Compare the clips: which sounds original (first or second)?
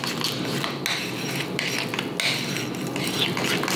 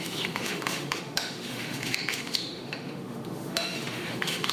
first